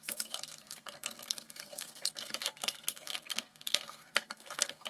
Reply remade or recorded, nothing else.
remade